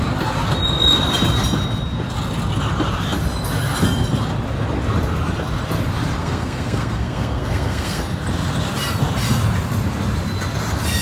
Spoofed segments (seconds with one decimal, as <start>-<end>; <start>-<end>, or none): 6.2-8.0